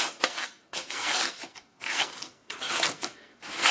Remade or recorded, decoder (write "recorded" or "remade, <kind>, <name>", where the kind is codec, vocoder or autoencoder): remade, codec, SNAC